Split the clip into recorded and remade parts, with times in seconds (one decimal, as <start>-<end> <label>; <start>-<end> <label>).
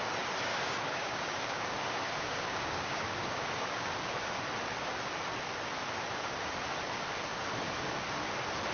0.0-0.5 recorded; 0.5-3.9 remade; 3.9-8.7 recorded